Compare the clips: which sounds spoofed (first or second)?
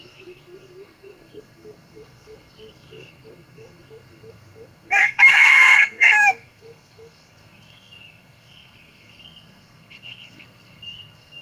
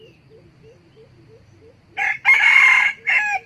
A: first